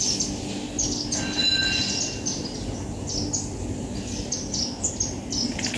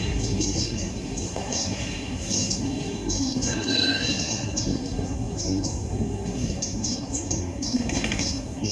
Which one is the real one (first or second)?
first